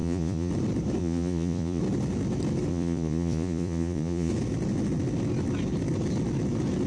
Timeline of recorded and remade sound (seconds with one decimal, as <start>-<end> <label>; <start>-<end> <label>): 0.0-0.5 remade; 0.5-1.0 recorded; 1.0-1.8 remade; 1.8-2.7 recorded; 2.7-4.3 remade; 4.3-6.9 recorded